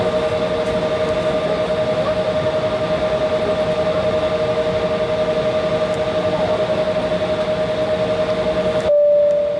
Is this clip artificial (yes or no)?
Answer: no